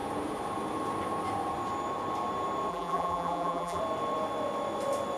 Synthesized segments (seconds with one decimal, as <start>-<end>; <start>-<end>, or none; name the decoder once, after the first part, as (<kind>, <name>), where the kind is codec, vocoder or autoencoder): 2.7-3.8 (vocoder, BigVGAN v2)